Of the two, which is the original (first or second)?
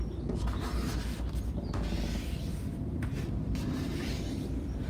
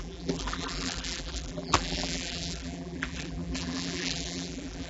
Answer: first